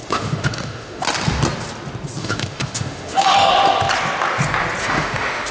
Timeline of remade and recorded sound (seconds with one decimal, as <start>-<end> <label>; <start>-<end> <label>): 0.0-1.0 remade; 1.0-2.2 recorded; 2.2-3.5 remade; 3.5-4.8 recorded; 4.8-5.5 remade